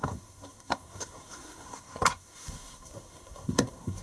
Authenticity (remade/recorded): remade